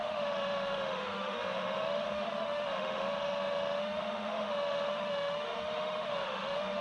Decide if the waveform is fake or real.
fake